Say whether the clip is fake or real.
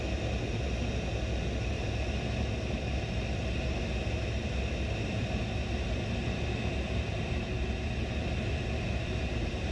real